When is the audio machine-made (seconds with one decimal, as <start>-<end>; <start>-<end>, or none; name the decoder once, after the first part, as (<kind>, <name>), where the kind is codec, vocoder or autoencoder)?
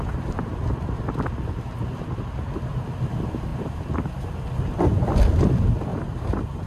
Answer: 3.5-4.3 (vocoder, BigVGAN v2); 5.9-6.7